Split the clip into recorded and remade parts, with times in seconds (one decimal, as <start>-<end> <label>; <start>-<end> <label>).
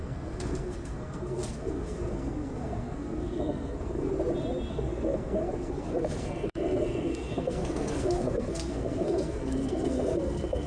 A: 0.0-4.1 remade; 4.1-4.7 recorded; 4.7-10.7 remade